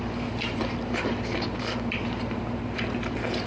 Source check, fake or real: real